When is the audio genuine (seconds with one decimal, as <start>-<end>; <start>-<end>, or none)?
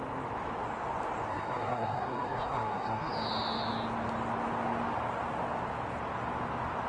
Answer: 0.0-1.3; 3.1-6.9